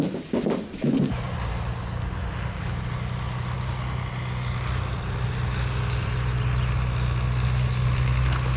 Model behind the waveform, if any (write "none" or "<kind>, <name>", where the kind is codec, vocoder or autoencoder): none